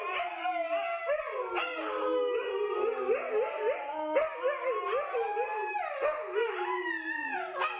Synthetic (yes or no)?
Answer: no